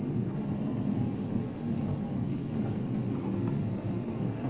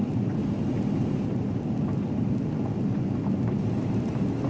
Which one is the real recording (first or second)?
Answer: second